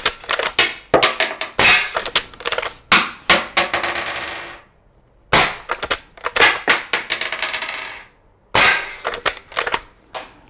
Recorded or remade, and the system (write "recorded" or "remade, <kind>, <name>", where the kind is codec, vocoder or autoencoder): recorded